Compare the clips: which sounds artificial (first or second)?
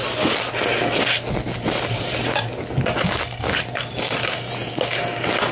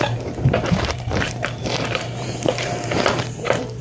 second